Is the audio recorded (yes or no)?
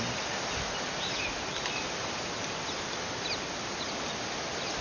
yes